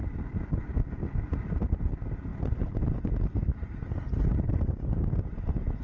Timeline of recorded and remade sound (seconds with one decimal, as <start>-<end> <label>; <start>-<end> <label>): 0.0-1.8 remade; 1.8-5.8 recorded